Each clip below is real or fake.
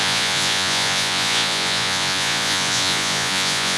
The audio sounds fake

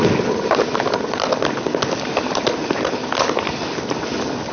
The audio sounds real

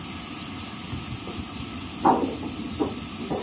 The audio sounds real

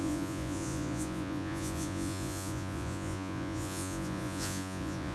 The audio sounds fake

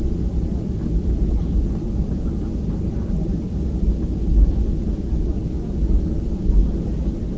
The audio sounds real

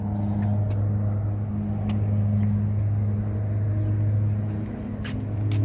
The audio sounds real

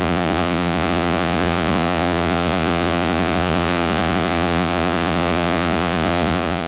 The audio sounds fake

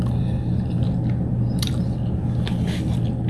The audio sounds real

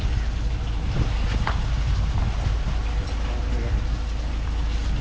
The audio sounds real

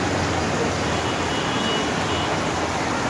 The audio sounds real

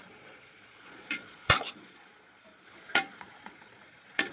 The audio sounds fake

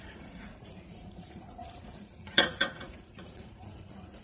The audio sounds fake